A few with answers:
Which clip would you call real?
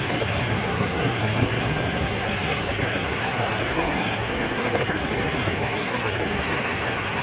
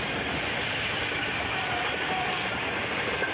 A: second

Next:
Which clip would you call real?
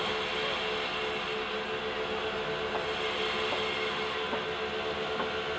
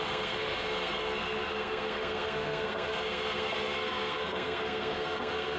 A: first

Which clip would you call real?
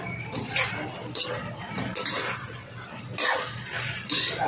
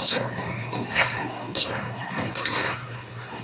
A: first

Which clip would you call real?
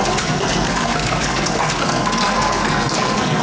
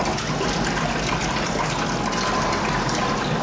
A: second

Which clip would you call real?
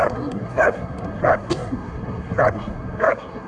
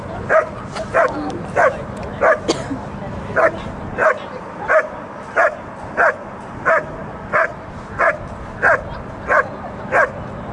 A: second